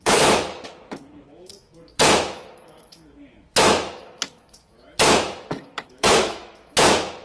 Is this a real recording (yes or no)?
no